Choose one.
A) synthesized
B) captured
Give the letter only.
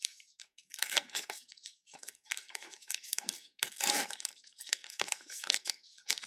A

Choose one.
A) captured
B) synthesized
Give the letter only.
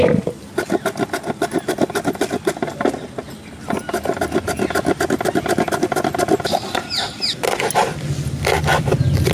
A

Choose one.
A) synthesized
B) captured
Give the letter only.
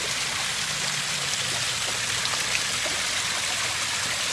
B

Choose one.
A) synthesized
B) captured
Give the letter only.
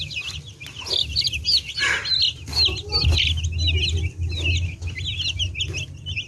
B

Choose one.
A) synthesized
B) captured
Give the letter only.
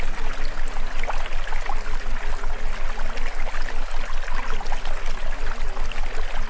B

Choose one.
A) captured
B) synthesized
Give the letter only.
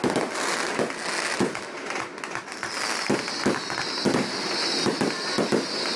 A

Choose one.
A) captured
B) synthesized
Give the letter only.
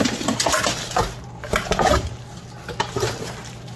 A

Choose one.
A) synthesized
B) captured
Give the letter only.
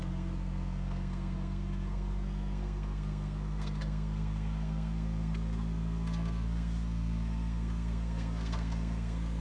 A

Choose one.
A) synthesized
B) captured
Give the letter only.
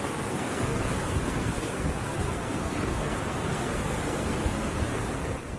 A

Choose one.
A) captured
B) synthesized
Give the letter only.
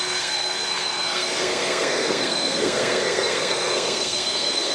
B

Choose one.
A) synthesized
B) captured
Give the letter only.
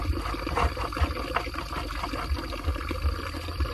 B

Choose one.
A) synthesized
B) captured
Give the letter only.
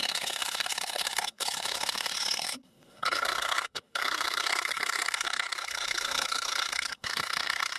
A